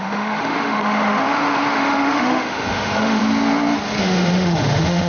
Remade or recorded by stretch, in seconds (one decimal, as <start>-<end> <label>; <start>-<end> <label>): 0.0-3.2 remade; 3.2-4.0 recorded; 4.0-5.1 remade